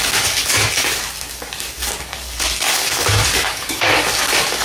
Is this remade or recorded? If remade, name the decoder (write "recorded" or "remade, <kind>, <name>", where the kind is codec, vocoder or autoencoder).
remade, codec, DAC